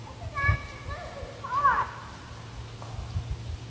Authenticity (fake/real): real